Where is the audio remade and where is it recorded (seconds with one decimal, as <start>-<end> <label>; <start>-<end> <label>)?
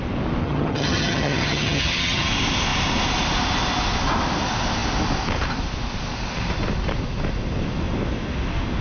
0.0-0.4 recorded; 0.4-2.3 remade; 2.3-8.8 recorded